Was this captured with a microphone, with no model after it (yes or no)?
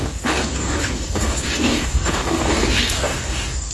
no